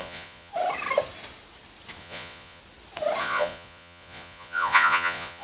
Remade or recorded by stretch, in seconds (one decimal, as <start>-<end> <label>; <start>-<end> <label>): 0.0-0.5 remade; 0.5-2.0 recorded; 2.0-2.6 remade; 2.6-3.2 recorded; 3.2-5.4 remade